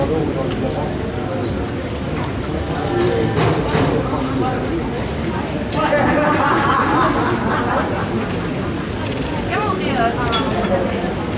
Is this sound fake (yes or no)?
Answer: no